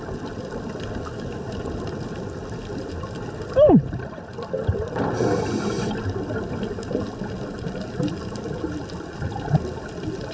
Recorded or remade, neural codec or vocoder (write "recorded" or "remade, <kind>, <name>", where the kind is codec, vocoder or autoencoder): recorded